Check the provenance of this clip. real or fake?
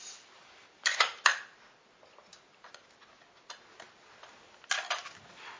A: real